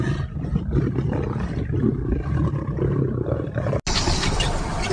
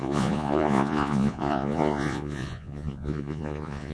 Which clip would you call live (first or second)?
first